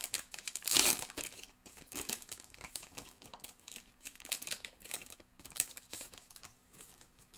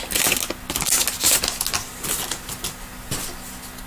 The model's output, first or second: first